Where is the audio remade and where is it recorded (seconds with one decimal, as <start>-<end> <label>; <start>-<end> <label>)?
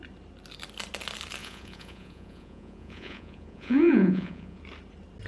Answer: 0.0-1.4 recorded; 1.4-4.6 remade; 4.6-5.3 recorded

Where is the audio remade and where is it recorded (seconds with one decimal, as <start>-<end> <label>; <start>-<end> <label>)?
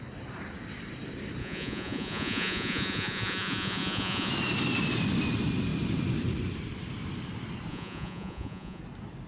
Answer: 0.0-1.4 recorded; 1.4-4.3 remade; 4.3-7.7 recorded; 7.7-8.8 remade; 8.8-9.3 recorded